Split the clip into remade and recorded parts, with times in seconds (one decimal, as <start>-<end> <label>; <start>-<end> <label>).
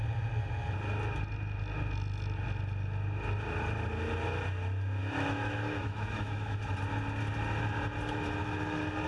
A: 0.0-5.0 recorded; 5.0-6.6 remade; 6.6-9.1 recorded